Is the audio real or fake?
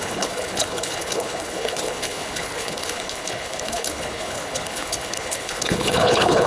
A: fake